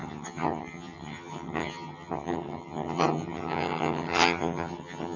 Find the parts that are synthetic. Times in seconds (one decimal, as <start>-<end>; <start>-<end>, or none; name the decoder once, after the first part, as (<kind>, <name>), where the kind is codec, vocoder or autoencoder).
0.0-5.2 (vocoder, HiFi-GAN)

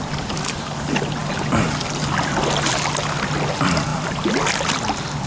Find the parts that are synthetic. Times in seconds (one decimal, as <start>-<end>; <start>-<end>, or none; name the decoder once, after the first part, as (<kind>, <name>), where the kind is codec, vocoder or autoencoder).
none

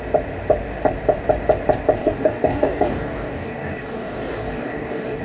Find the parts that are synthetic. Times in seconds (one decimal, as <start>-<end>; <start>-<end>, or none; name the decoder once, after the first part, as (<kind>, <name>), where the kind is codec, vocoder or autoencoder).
2.0-5.2 (codec, DAC)

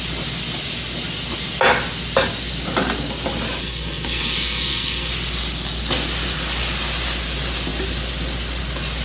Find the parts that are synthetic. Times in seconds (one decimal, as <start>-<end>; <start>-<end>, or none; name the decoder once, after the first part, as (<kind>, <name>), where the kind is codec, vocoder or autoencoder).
3.6-5.1 (codec, SNAC)